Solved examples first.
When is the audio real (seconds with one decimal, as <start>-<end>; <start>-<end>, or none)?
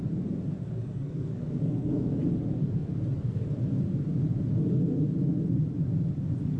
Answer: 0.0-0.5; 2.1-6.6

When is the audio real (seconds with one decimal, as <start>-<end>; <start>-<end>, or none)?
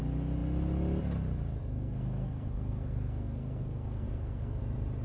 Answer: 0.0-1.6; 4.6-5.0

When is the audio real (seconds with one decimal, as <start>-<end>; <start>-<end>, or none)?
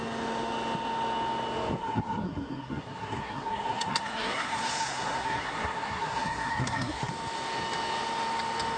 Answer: 0.0-1.8; 7.1-8.8